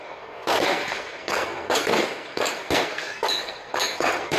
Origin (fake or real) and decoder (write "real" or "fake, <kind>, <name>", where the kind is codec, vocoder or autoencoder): fake, codec, SNAC